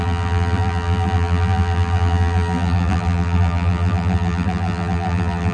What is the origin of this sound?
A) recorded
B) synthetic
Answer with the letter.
B